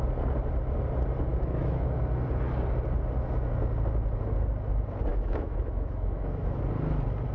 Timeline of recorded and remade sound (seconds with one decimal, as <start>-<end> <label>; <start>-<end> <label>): 0.0-1.3 recorded; 1.3-2.0 remade; 2.0-5.1 recorded; 5.1-6.6 remade; 6.6-7.3 recorded